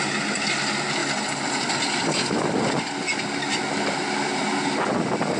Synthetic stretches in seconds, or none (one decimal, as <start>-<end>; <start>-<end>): none